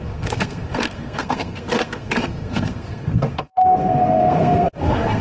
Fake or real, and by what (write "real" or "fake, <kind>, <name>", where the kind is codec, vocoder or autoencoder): fake, codec, SNAC